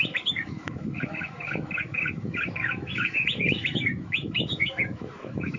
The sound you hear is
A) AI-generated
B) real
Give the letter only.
A